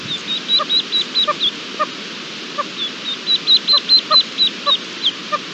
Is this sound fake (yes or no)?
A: no